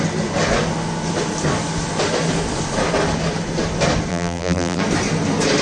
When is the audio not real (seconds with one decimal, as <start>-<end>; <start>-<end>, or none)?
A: 4.1-4.8